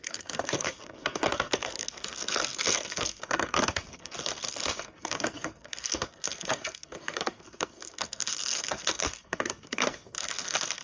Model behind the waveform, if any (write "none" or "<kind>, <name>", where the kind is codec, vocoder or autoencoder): codec, SNAC